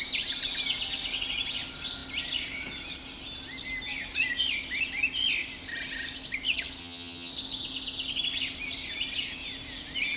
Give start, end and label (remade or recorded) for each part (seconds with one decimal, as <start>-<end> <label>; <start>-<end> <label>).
0.0-6.8 recorded; 6.8-7.3 remade; 7.3-10.2 recorded